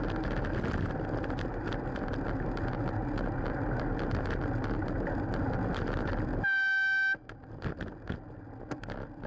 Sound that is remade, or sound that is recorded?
recorded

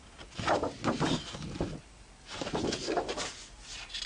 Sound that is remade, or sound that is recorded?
recorded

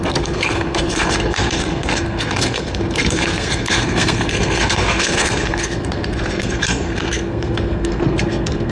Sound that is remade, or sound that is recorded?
remade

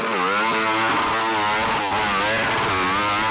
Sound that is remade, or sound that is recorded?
recorded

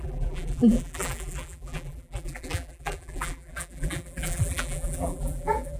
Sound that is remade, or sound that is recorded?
remade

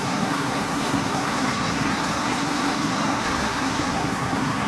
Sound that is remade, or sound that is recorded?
remade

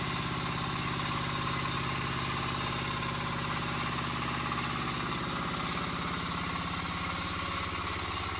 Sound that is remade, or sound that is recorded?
recorded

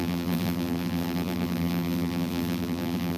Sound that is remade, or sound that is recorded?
remade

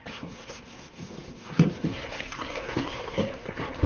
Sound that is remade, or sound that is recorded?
remade